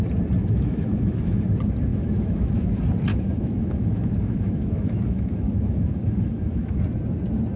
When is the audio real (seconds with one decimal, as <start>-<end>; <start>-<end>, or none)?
0.0-0.4; 1.4-1.9; 2.7-3.1; 6.8-7.6